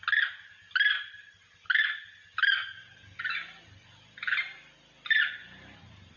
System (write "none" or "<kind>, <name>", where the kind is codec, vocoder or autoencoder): none